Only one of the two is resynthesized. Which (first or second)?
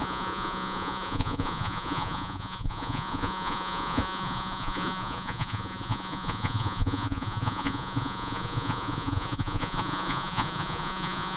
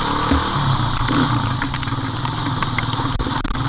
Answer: first